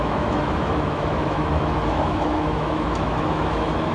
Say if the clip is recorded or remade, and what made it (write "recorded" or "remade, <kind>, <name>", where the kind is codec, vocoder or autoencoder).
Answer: remade, autoencoder, DAC-VAE